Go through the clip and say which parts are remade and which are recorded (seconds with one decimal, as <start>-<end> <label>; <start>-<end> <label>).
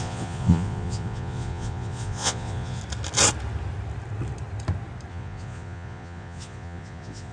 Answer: 0.0-2.8 remade; 2.8-5.1 recorded; 5.1-7.3 remade